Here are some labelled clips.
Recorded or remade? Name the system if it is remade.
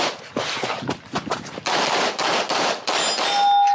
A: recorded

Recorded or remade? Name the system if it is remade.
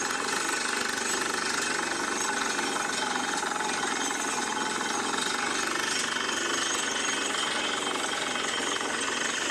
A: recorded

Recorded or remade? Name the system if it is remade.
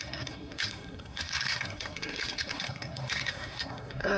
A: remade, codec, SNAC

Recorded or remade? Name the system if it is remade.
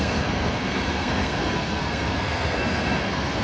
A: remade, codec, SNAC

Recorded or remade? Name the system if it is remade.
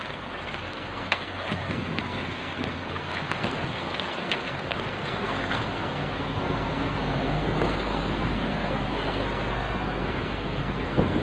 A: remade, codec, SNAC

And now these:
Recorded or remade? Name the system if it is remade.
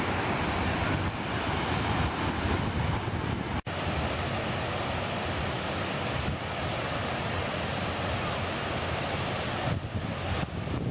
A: recorded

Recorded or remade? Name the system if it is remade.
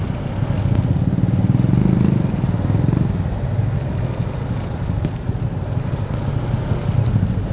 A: recorded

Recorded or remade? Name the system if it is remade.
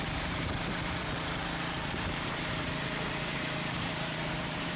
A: remade, vocoder, BigVGAN v2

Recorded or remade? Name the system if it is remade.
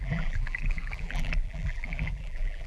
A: remade, vocoder, BigVGAN v2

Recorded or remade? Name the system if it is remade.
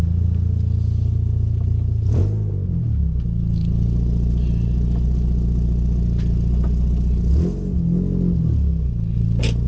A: recorded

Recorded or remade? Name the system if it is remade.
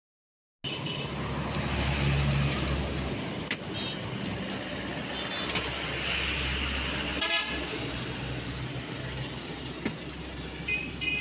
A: recorded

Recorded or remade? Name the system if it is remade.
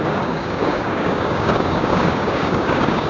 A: remade, codec, DAC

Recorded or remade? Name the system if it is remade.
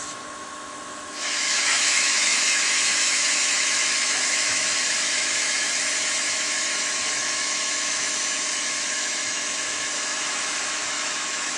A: remade, autoencoder, DAC-VAE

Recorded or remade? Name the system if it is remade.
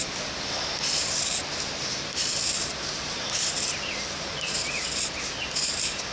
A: remade, vocoder, BigVGAN v2